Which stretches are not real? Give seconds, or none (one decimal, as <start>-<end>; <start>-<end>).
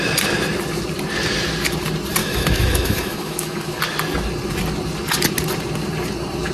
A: 2.2-3.8